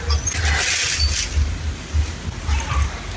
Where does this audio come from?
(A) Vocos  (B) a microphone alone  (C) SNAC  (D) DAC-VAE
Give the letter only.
B